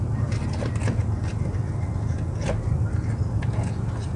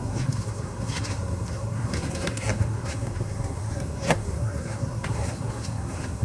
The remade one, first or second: second